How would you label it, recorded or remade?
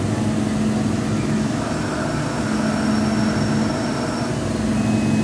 recorded